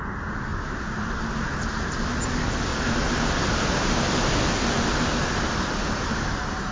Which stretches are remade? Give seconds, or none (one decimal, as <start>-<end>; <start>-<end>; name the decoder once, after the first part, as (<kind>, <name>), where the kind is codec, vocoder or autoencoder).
0.5-1.3 (vocoder, BigVGAN v2); 2.7-6.7